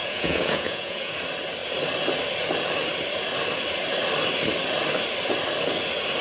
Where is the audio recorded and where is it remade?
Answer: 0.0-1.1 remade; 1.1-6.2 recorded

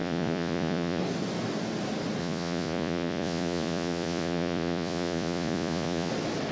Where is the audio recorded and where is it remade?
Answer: 0.0-1.0 remade; 1.0-2.2 recorded; 2.2-6.1 remade; 6.1-6.5 recorded

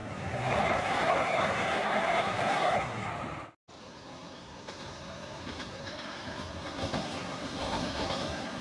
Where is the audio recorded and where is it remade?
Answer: 0.0-3.1 remade; 3.1-3.8 recorded; 3.8-8.6 remade